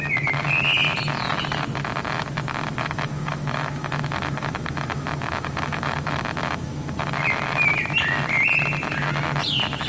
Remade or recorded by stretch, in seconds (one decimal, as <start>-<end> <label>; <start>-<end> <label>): 0.0-2.5 recorded; 2.5-7.1 remade; 7.1-9.9 recorded